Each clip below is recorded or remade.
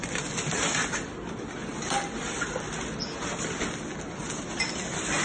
recorded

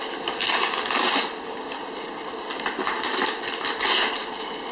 recorded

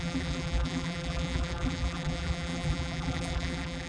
remade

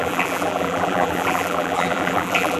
remade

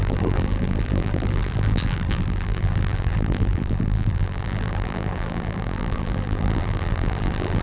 remade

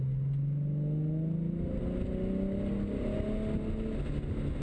recorded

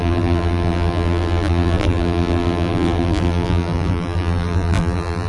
remade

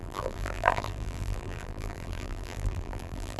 remade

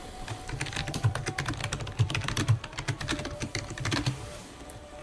remade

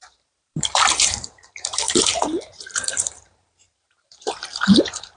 remade